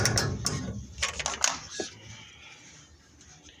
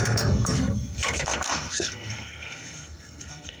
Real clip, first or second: first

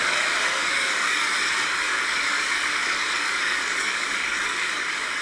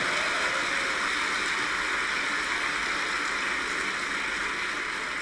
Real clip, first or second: second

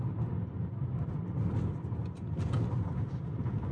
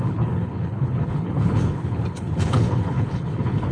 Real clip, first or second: first